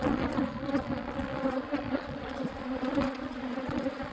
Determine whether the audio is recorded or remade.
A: remade